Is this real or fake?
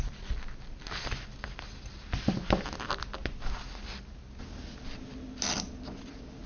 real